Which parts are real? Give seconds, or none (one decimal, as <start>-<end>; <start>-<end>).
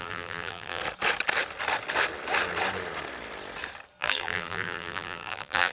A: 0.8-4.0